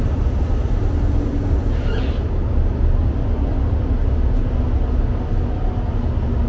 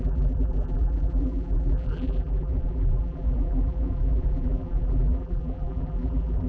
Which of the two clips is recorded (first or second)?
first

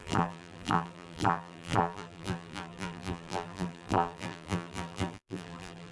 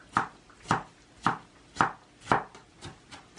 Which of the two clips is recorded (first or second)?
second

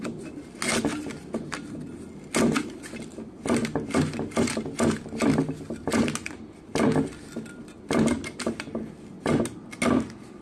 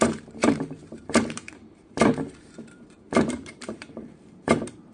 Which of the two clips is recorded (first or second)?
first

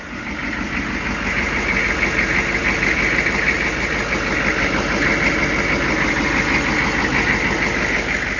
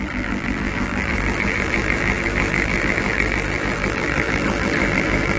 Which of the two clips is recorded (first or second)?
first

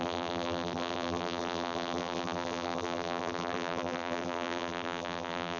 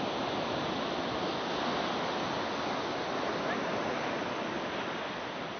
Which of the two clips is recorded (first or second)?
second